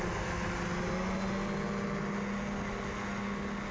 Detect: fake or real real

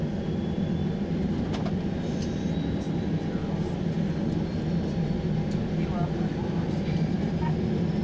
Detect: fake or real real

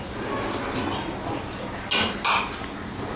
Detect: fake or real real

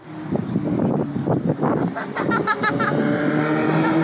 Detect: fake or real real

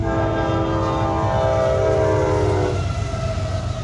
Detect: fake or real real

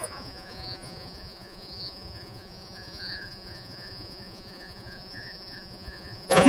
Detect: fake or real fake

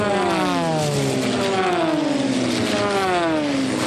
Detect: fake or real real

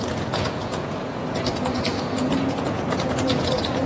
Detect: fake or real fake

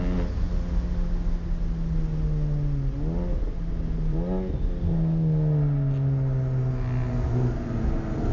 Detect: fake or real real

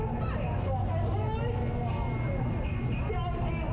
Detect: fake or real real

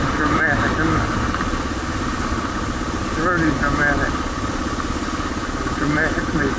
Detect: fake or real real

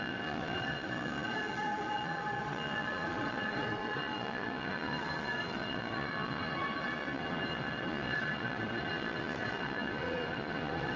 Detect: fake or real fake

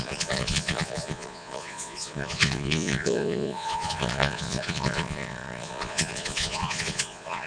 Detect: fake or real fake